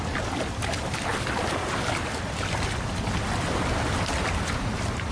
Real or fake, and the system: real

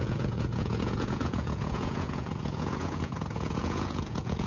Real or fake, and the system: fake, vocoder, Vocos